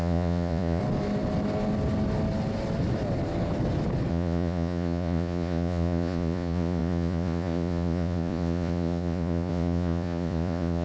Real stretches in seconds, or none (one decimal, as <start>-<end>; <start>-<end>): 0.8-4.1